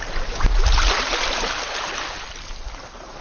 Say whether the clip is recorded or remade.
recorded